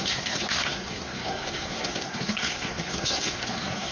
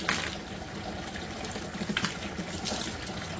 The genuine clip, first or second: second